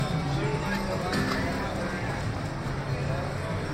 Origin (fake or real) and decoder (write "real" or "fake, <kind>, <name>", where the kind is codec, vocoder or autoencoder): real